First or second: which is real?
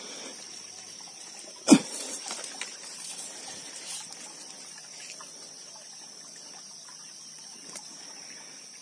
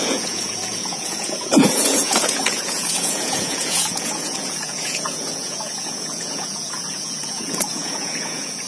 first